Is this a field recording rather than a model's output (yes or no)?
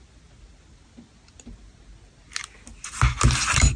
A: yes